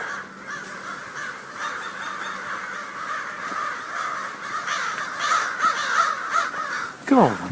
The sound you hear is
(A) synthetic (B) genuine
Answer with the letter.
B